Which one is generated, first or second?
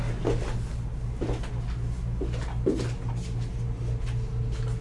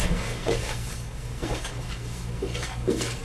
second